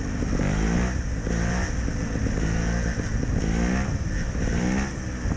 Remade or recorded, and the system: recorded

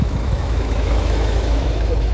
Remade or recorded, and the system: remade, autoencoder, DAC-VAE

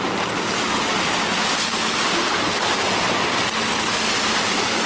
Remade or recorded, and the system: recorded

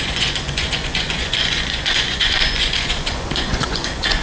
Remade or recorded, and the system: remade, vocoder, Vocos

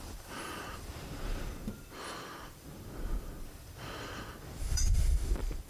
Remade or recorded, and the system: remade, vocoder, BigVGAN v2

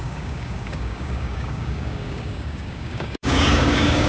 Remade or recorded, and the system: remade, codec, DAC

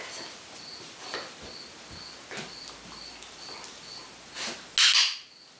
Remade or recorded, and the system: recorded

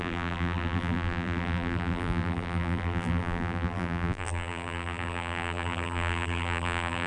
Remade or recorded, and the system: remade, vocoder, BigVGAN v2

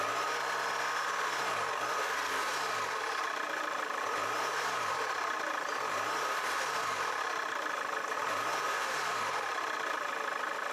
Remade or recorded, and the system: recorded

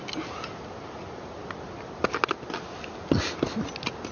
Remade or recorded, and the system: recorded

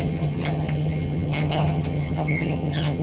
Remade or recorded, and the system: remade, vocoder, HiFi-GAN